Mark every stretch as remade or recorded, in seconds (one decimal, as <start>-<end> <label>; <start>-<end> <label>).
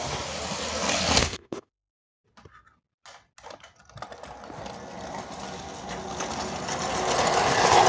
0.0-1.2 recorded; 1.2-1.9 remade; 1.9-7.9 recorded